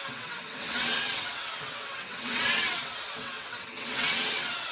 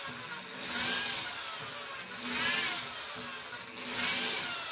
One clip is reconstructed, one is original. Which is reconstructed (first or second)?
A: first